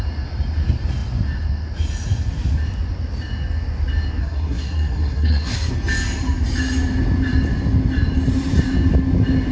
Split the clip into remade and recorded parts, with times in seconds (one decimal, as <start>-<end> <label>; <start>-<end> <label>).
0.0-4.2 recorded; 4.2-5.7 remade; 5.7-9.5 recorded